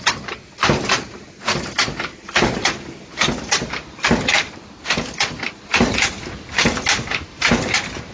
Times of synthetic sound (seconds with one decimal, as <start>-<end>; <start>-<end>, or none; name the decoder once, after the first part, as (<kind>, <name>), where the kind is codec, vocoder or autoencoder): 0.0-2.1 (vocoder, BigVGAN v2); 4.0-4.8; 5.5-8.1